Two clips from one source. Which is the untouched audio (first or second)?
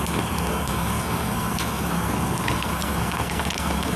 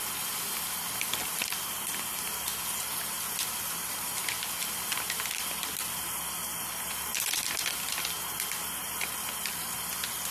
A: second